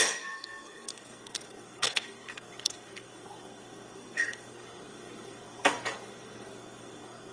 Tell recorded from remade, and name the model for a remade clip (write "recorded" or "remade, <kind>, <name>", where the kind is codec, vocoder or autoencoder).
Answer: remade, codec, SNAC